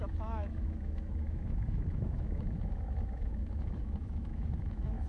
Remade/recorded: remade